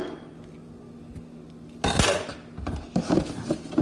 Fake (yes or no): no